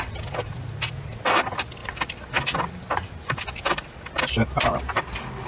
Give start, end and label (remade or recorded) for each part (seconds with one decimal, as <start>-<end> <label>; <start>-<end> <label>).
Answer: 0.0-5.5 recorded